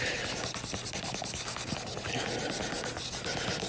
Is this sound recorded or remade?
recorded